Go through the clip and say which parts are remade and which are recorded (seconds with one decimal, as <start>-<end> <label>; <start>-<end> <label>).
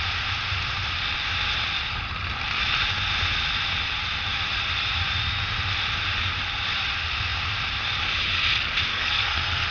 0.0-8.9 recorded; 8.9-9.7 remade